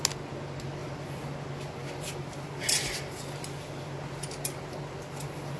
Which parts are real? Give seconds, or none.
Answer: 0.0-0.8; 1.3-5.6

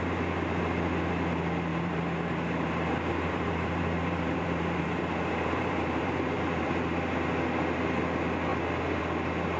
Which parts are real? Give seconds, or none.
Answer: 0.0-1.7; 6.7-9.6

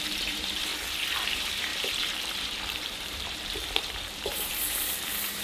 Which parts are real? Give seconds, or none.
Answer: 0.7-1.2

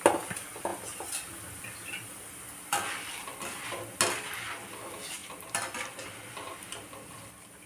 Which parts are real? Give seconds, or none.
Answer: 0.0-0.7; 4.0-5.2

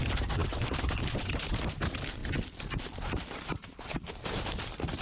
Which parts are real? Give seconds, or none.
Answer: 2.2-3.1

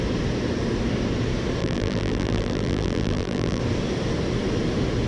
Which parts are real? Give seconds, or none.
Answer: 0.0-1.6; 3.6-5.1

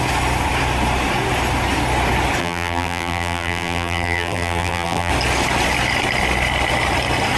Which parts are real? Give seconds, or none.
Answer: 0.0-2.4; 5.1-7.4

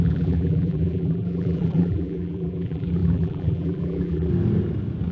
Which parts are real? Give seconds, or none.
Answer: 4.3-5.1